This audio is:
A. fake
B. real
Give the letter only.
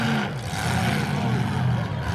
B